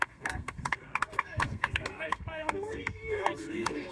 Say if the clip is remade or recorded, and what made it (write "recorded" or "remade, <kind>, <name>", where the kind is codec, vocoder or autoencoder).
remade, codec, SNAC